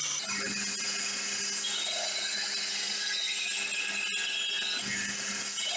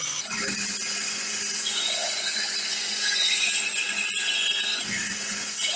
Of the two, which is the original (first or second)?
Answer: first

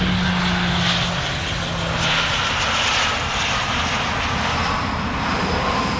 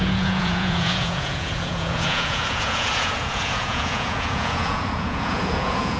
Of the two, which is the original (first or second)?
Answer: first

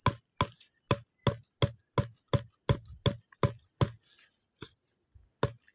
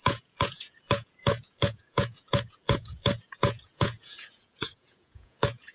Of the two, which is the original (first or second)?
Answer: first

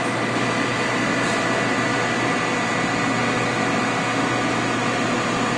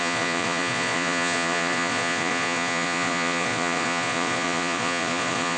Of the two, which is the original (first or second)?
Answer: first